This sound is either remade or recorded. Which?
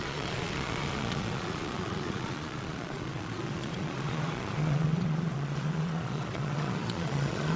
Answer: remade